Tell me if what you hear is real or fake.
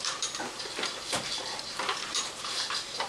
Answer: fake